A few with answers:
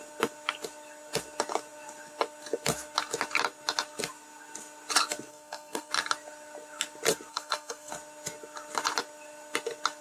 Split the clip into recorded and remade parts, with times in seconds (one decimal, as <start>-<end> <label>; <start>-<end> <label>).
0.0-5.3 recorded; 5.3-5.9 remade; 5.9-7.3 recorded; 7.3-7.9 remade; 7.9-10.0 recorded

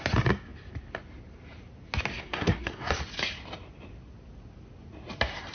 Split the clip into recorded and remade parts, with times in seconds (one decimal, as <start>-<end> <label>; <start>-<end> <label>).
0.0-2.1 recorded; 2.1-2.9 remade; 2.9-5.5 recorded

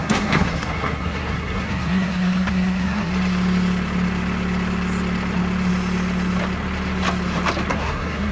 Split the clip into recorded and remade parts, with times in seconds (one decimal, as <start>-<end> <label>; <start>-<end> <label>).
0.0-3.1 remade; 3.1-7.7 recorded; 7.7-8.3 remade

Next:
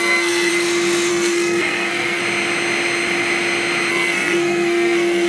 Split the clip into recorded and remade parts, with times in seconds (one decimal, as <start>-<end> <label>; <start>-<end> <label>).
0.0-0.5 remade; 0.5-1.1 recorded; 1.1-2.2 remade; 2.2-3.9 recorded; 3.9-5.3 remade

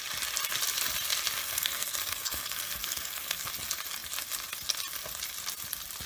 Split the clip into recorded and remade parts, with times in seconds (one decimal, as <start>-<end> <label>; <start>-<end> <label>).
0.0-1.4 recorded; 1.4-3.5 remade; 3.5-6.1 recorded